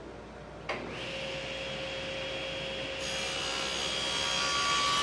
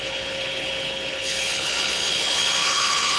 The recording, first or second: first